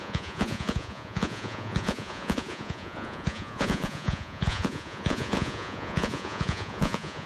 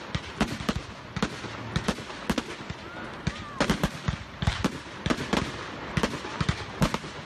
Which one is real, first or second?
second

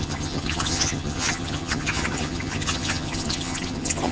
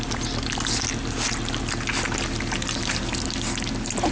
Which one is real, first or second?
second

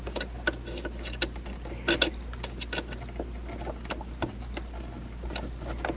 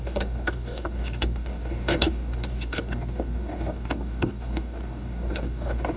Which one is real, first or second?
first